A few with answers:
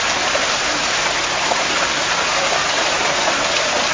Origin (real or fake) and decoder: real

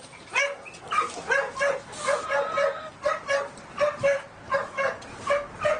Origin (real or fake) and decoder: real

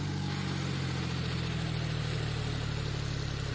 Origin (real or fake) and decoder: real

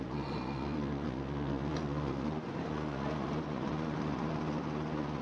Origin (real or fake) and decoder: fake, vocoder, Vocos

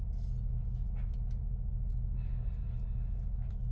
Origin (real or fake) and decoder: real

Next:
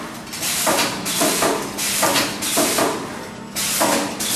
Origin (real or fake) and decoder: real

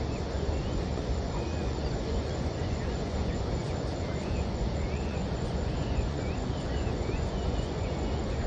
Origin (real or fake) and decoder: fake, vocoder, Vocos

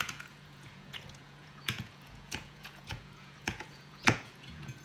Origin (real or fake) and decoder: fake, vocoder, Vocos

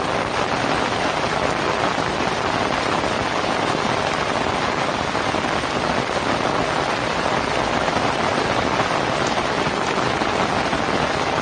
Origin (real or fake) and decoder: real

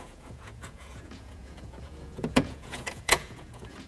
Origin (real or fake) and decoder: fake, vocoder, Vocos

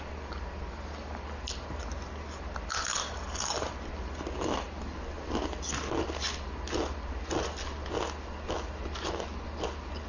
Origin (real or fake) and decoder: real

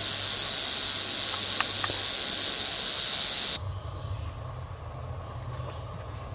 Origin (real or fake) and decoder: real